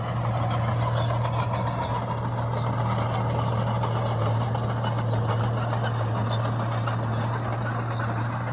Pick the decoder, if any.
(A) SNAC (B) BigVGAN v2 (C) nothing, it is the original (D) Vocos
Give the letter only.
C